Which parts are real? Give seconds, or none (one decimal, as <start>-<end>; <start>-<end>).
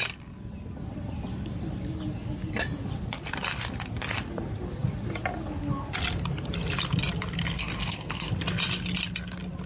0.0-7.6; 8.3-9.7